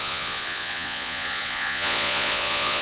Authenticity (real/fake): fake